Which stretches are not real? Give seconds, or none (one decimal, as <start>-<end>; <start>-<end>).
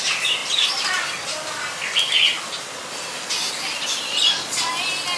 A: 4.1-4.7